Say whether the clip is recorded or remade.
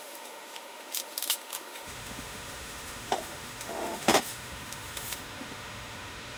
remade